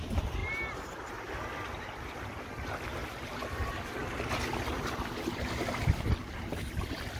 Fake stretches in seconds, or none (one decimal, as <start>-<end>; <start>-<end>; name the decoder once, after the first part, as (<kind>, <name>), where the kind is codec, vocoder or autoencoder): none